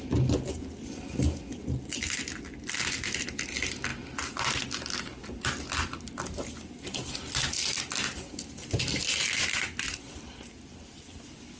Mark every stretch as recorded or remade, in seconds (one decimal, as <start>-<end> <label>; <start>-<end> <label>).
0.0-11.6 recorded